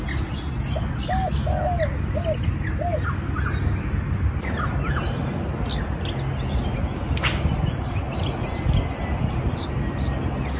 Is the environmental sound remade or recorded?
recorded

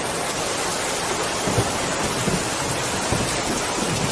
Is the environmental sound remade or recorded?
recorded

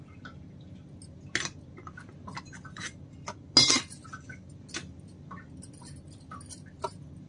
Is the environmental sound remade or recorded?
recorded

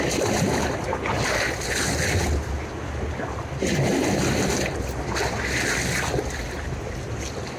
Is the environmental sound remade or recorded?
recorded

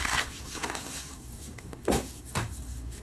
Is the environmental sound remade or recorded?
remade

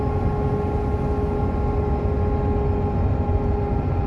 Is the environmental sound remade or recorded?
recorded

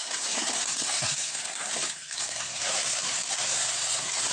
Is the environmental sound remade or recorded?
remade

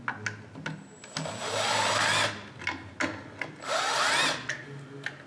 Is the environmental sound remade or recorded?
recorded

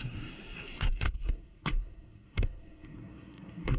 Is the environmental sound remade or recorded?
remade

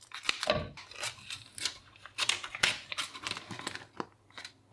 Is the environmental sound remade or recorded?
recorded